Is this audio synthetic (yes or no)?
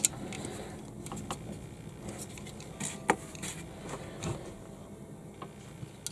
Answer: no